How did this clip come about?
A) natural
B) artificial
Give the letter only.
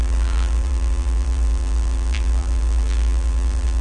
B